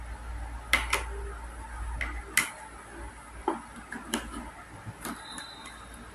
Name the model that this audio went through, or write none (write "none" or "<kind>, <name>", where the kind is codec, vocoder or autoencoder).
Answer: none